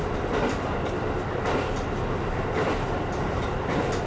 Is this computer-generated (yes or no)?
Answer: no